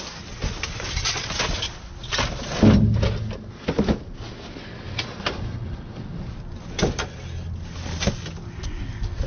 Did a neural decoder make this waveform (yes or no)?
no